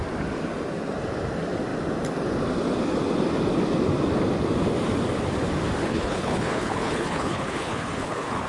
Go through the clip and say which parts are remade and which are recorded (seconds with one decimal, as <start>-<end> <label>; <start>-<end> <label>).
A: 0.0-5.8 recorded; 5.8-8.5 remade